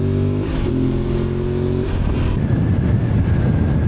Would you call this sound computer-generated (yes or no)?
no